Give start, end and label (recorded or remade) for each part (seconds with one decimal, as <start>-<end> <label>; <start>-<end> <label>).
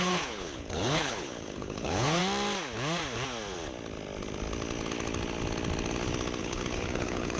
0.0-2.2 remade; 2.2-6.4 recorded; 6.4-7.4 remade